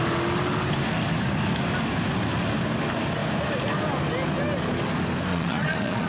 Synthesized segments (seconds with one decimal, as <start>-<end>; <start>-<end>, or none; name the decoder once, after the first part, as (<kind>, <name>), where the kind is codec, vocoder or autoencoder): 5.3-6.1 (vocoder, Vocos)